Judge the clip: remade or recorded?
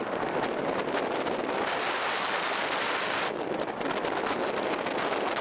recorded